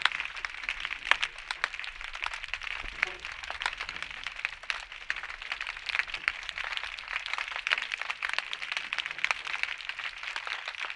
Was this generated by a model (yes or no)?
no